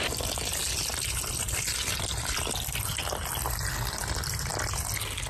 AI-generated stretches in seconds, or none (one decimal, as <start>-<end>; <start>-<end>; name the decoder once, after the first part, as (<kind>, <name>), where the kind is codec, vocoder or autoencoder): none